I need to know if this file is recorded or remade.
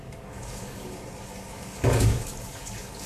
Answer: remade